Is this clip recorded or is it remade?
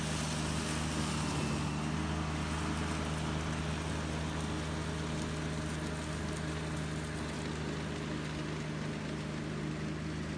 recorded